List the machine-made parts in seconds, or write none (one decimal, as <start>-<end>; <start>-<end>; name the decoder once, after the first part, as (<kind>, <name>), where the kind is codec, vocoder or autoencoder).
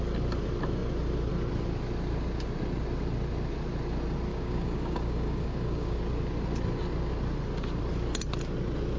4.3-6.0 (codec, DAC)